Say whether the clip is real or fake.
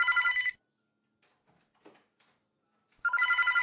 real